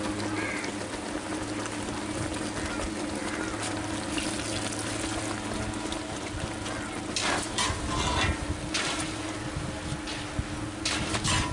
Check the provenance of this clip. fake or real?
real